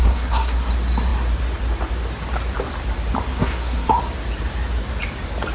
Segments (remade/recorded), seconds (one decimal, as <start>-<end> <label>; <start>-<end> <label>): 0.0-0.7 remade; 0.7-3.3 recorded; 3.3-4.0 remade; 4.0-5.5 recorded